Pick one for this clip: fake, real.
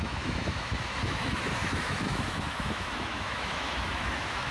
fake